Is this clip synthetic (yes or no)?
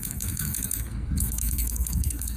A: yes